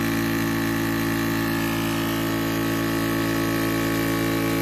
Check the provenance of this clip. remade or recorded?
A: recorded